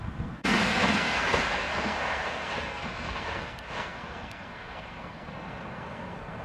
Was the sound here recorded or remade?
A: remade